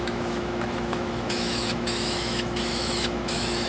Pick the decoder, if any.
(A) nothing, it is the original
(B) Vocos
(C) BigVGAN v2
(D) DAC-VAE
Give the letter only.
D